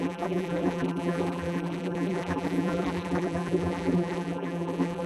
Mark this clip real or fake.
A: fake